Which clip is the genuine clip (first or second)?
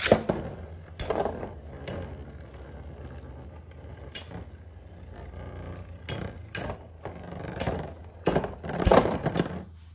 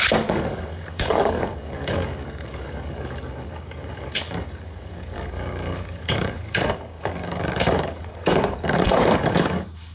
first